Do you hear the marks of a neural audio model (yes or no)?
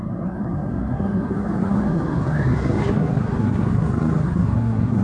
yes